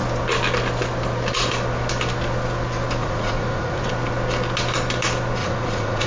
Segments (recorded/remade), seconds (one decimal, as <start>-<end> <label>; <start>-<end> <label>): 0.0-3.0 recorded; 3.0-3.9 remade; 3.9-5.4 recorded; 5.4-6.1 remade